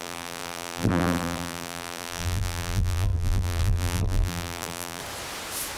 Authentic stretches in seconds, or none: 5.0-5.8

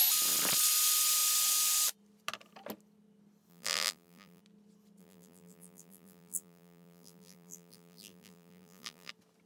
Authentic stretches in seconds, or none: 0.0-3.5; 4.4-5.0; 9.1-9.5